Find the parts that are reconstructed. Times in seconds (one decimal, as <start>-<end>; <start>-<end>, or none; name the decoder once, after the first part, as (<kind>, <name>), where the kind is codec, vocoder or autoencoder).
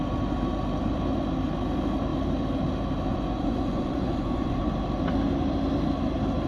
3.1-4.6 (vocoder, Vocos)